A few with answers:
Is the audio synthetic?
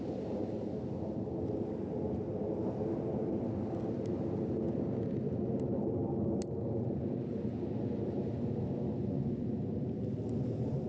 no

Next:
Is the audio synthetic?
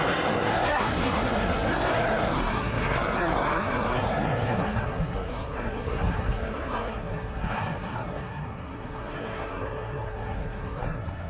yes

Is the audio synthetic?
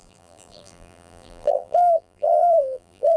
yes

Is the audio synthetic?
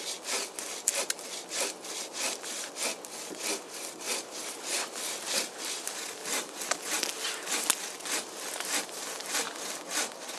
no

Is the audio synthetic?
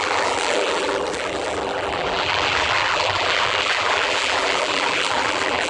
yes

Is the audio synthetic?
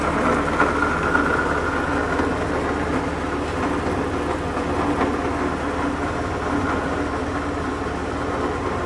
no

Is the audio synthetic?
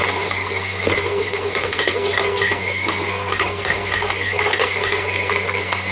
yes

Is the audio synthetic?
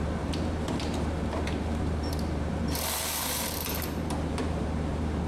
yes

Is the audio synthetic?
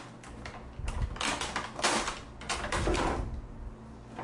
no